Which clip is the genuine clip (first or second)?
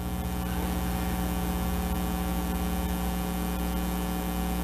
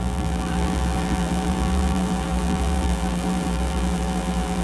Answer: first